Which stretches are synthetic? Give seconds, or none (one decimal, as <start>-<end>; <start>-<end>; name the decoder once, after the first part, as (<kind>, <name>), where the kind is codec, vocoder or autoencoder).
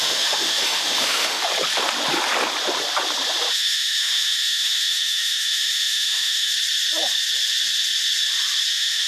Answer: 0.0-1.4 (autoencoder, DAC-VAE); 3.5-6.5; 8.7-9.1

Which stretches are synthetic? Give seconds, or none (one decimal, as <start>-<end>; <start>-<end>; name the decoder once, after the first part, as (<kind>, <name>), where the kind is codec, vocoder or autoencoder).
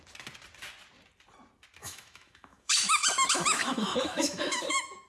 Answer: 1.8-5.1 (autoencoder, DAC-VAE)